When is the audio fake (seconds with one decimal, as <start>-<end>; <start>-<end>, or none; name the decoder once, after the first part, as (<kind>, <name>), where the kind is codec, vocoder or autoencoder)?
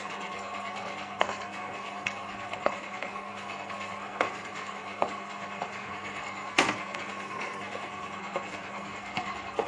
0.0-9.7 (codec, SNAC)